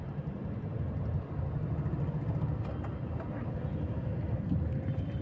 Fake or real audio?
real